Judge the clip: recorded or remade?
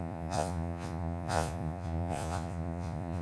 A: remade